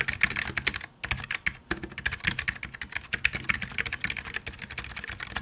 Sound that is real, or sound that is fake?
real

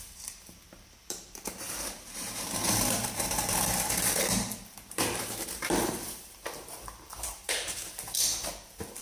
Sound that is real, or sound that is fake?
fake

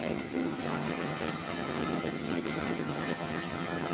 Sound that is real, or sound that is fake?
fake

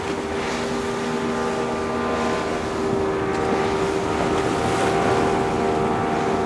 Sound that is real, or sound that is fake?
real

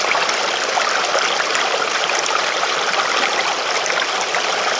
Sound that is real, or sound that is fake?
real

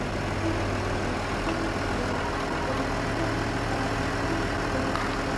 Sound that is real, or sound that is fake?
real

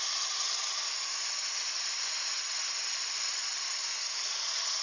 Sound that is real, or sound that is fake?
real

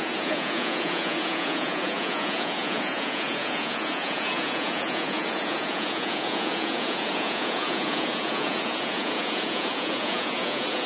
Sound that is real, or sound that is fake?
fake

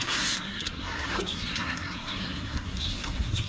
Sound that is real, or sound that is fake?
fake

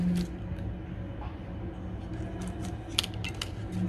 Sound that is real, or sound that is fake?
real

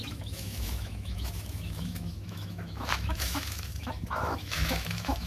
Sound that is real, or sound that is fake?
fake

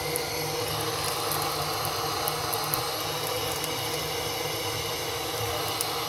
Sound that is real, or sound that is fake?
real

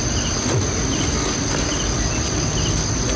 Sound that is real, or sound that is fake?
real